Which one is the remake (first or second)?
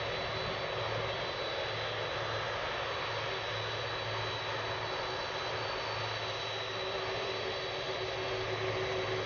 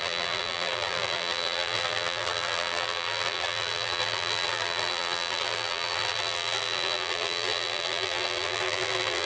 second